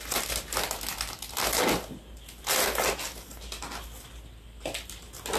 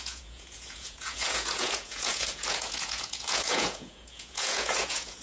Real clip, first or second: first